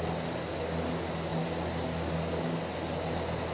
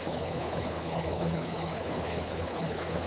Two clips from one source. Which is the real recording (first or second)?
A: first